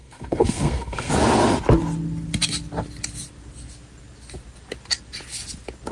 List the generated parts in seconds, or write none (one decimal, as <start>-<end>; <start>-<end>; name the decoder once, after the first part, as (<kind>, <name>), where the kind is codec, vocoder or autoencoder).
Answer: 0.0-1.1 (codec, SNAC)